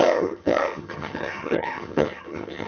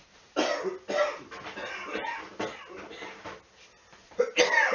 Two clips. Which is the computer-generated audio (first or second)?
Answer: first